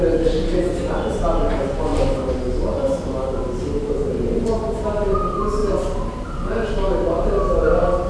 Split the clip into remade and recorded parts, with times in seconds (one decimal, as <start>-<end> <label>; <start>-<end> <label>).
0.0-8.1 recorded